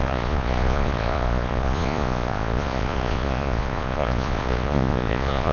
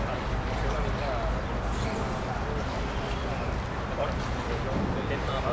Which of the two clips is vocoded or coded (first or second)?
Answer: first